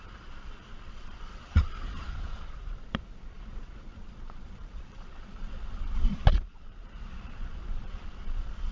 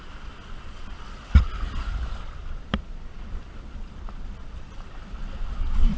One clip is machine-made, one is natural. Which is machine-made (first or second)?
first